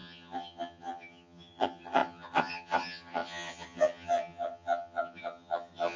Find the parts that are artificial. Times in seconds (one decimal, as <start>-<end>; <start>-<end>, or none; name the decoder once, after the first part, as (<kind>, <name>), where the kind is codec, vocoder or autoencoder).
0.0-6.0 (vocoder, HiFi-GAN)